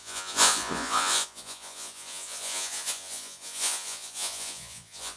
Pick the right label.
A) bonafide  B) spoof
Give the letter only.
B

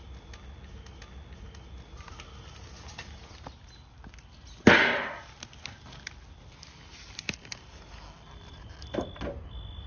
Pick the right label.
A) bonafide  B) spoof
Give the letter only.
A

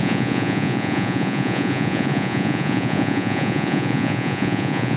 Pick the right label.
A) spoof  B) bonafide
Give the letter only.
A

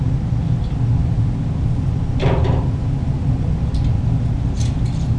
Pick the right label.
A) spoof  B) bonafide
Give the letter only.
B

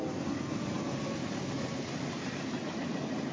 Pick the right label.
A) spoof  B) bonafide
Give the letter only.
B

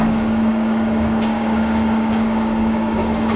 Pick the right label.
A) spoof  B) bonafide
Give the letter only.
A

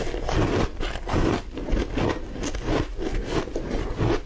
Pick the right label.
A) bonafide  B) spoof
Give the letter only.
B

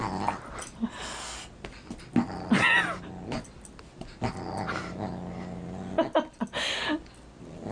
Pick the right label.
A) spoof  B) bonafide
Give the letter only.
B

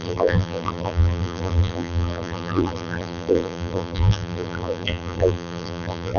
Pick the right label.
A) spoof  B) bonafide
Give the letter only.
A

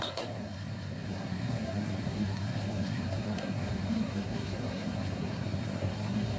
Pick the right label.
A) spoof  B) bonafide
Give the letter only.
A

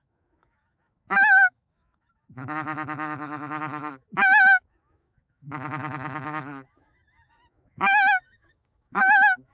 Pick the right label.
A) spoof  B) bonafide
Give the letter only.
A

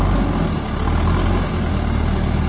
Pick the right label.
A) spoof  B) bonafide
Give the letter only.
B